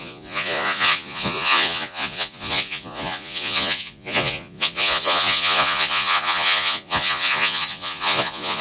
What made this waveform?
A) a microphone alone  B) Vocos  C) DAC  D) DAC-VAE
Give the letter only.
B